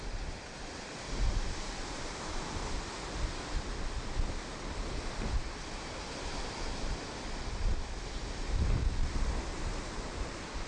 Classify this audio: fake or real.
real